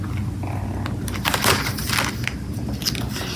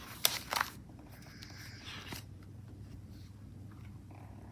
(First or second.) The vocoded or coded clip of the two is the second